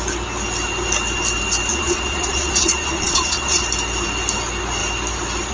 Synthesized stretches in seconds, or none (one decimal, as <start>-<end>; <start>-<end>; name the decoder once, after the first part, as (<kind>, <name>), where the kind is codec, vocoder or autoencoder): 1.7-3.6 (vocoder, Vocos)